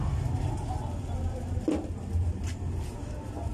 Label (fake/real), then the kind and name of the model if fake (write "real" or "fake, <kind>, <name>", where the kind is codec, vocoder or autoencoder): real